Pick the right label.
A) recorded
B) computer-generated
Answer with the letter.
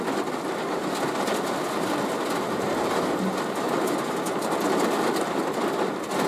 A